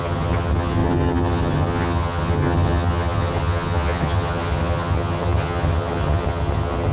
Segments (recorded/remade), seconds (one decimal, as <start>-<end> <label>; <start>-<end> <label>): 0.0-6.9 remade